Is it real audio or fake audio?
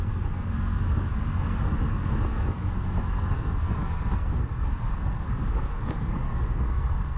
fake